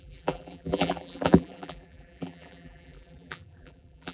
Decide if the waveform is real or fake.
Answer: fake